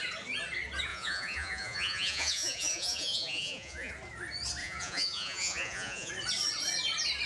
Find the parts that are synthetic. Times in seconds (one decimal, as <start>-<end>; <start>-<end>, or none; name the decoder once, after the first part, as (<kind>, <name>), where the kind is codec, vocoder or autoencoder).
0.9-3.9 (vocoder, Vocos); 4.6-6.1